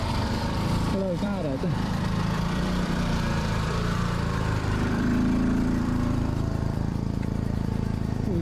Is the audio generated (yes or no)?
yes